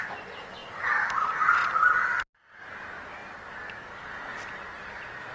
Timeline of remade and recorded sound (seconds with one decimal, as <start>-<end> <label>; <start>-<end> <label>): 0.0-5.3 recorded